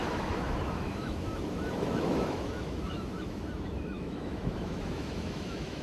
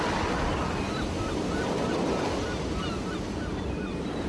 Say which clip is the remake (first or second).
first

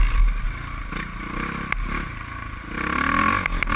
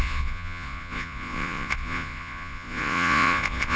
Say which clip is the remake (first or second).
second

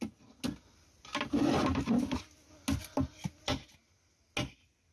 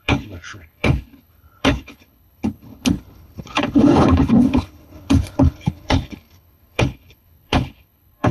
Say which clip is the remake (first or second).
second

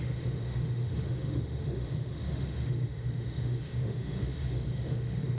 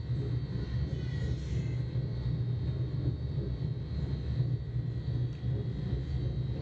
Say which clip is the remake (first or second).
first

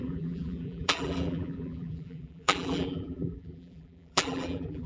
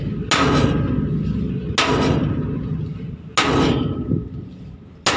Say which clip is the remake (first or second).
first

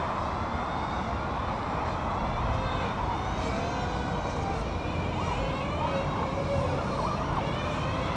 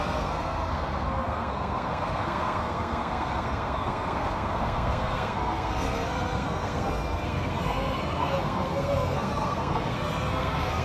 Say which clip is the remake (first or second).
second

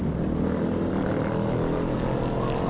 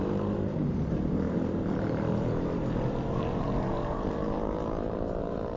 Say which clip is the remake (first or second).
second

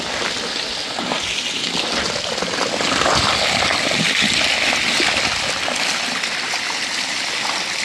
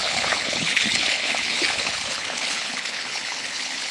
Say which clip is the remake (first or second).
second